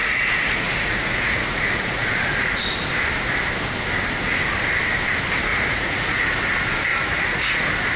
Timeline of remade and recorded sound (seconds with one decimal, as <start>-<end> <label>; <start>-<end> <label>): 0.0-2.6 remade; 2.6-5.5 recorded; 5.5-6.4 remade; 6.4-6.9 recorded; 6.9-7.6 remade; 7.6-8.0 recorded